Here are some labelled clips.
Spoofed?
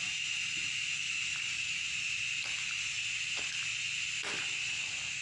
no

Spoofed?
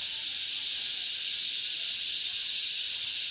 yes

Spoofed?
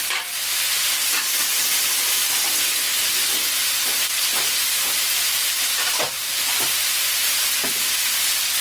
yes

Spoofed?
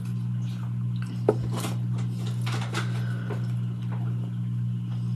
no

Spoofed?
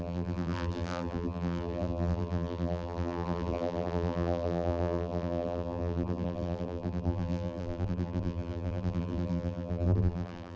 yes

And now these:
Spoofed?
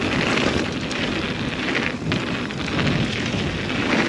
no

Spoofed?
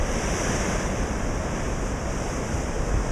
yes